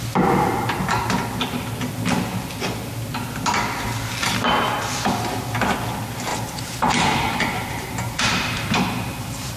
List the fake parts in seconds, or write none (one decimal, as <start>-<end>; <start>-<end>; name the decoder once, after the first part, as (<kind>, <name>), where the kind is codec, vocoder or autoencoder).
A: 6.3-9.6 (vocoder, BigVGAN v2)